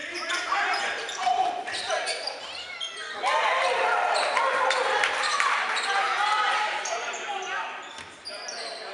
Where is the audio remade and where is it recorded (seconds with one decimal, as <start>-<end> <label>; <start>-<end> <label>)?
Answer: 0.0-2.4 remade; 2.4-5.3 recorded; 5.3-7.3 remade; 7.3-8.9 recorded